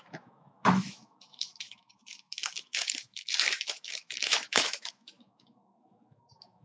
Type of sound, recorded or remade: remade